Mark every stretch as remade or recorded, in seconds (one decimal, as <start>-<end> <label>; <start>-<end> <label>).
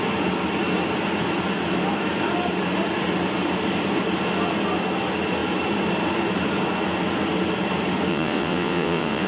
0.0-8.1 recorded; 8.1-9.3 remade